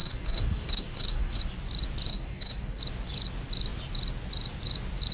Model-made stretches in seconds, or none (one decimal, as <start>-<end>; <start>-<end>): 0.0-1.4; 2.1-2.8